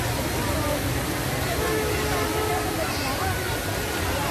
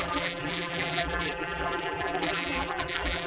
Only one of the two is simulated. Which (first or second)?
second